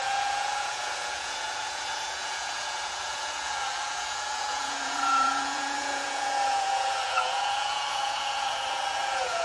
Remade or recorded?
remade